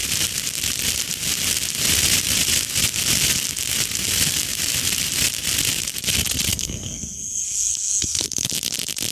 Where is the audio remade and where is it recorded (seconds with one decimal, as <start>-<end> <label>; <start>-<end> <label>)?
0.0-6.5 recorded; 6.5-8.5 remade; 8.5-9.1 recorded